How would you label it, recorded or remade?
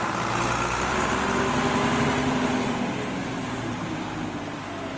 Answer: recorded